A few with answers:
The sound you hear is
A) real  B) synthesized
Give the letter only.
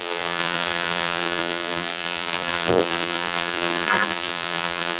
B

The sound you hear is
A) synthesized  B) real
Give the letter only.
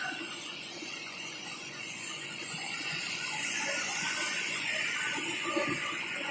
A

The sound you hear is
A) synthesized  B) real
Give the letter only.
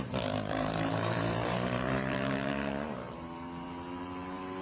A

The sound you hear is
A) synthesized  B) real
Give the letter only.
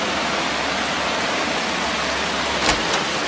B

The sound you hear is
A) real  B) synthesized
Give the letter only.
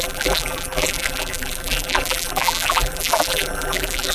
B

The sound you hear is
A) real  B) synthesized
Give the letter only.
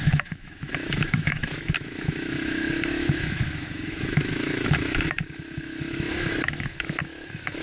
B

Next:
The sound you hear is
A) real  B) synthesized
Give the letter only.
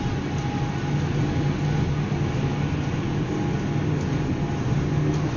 A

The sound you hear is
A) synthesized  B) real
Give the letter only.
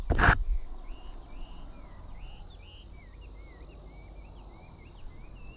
B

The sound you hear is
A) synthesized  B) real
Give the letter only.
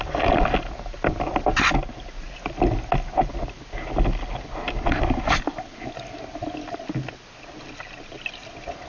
B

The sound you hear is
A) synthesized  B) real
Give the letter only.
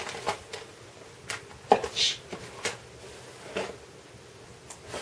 B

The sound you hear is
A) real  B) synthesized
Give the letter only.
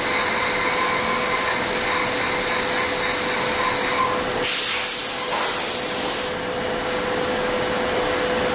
A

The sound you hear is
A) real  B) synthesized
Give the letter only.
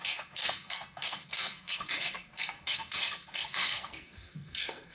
B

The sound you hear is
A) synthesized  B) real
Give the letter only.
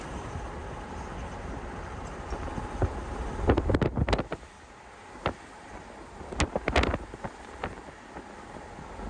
B